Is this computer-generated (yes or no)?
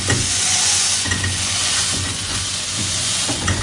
yes